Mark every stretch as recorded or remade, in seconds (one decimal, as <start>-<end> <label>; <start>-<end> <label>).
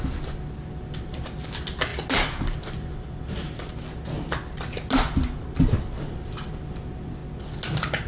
0.0-8.1 recorded